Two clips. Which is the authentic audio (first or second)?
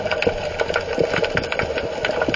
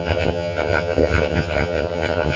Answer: first